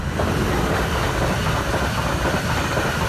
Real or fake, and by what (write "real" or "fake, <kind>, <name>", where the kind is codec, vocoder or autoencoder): real